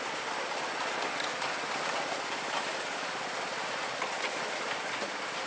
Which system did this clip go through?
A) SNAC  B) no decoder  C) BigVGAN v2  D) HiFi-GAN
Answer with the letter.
B